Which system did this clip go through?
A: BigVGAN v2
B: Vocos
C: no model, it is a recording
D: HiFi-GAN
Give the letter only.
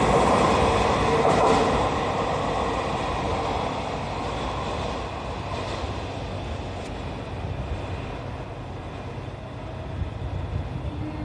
C